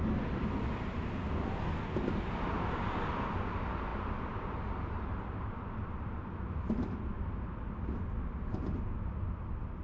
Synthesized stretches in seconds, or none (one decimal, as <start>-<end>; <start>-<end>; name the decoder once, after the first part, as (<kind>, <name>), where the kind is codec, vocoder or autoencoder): none